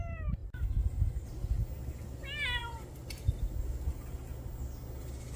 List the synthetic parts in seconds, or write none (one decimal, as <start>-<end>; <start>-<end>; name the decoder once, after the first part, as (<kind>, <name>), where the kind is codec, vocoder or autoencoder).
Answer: 2.6-3.4 (vocoder, BigVGAN v2)